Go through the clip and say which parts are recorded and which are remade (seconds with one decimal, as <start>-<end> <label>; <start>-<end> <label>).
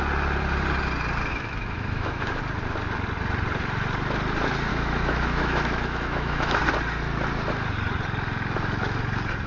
0.0-1.3 recorded; 1.3-2.4 remade; 2.4-4.7 recorded; 4.7-6.6 remade; 6.6-9.5 recorded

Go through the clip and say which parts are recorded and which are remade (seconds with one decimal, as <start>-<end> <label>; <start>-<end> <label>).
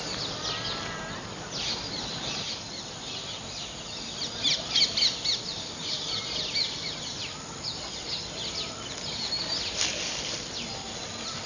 0.0-11.5 recorded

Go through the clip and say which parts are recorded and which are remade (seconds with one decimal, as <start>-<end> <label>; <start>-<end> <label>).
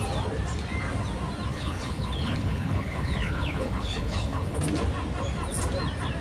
0.0-1.5 recorded; 1.5-4.6 remade; 4.6-6.2 recorded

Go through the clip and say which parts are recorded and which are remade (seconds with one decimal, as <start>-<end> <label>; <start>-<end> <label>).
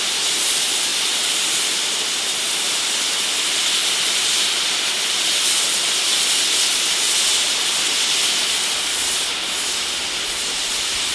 0.0-11.1 recorded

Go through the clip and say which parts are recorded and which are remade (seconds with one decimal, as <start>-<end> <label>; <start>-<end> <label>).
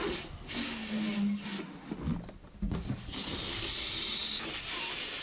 0.0-5.2 recorded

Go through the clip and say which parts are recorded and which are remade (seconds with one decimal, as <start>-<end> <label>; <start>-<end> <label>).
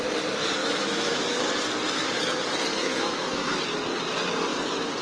0.0-0.6 recorded; 0.6-1.4 remade; 1.4-2.7 recorded; 2.7-3.6 remade; 3.6-5.0 recorded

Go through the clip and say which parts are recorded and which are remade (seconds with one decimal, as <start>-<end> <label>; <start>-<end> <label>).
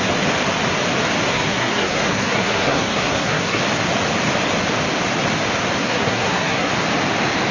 0.0-1.3 recorded; 1.3-3.6 remade; 3.6-5.8 recorded; 5.8-6.7 remade; 6.7-7.5 recorded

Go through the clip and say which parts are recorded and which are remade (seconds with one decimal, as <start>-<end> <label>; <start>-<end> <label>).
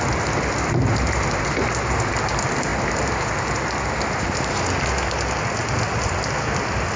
0.0-7.0 recorded